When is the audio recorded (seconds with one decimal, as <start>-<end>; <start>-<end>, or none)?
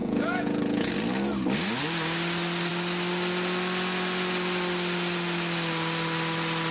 0.9-6.7